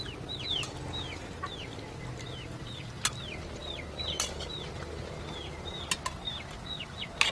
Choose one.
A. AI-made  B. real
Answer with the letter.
B